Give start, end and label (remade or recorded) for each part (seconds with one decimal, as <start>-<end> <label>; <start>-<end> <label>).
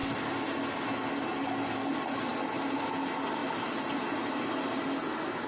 0.0-3.4 recorded; 3.4-4.8 remade; 4.8-5.5 recorded